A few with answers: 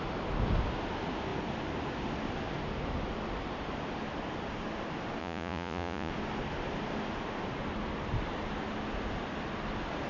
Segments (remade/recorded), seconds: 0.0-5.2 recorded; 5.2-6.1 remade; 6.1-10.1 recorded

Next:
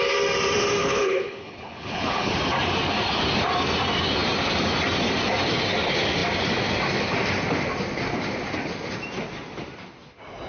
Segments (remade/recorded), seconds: 0.0-0.8 recorded; 0.8-2.3 remade; 2.3-10.5 recorded

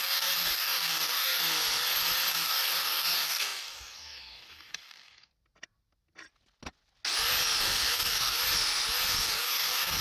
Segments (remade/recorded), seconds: 0.0-1.4 remade; 1.4-2.3 recorded; 2.3-5.3 remade; 5.3-7.6 recorded; 7.6-8.4 remade; 8.4-9.2 recorded; 9.2-10.0 remade

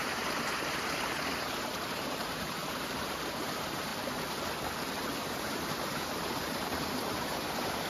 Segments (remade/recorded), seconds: 0.0-3.9 remade; 3.9-5.3 recorded; 5.3-7.9 remade

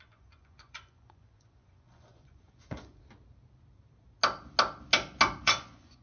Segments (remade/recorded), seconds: 0.0-2.9 remade; 2.9-5.4 recorded; 5.4-6.0 remade

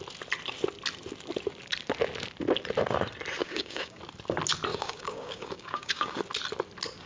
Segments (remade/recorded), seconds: 0.0-3.4 recorded; 3.4-4.0 remade; 4.0-4.7 recorded; 4.7-6.2 remade; 6.2-7.1 recorded

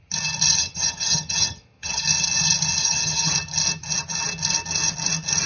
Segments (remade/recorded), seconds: 0.0-0.6 recorded; 0.6-2.0 remade; 2.0-2.8 recorded; 2.8-3.3 remade; 3.3-5.5 recorded

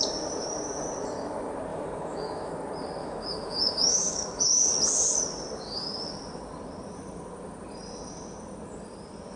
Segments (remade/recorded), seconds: 0.0-1.7 recorded; 1.7-2.5 remade; 2.5-3.0 recorded; 3.0-4.4 remade; 4.4-9.4 recorded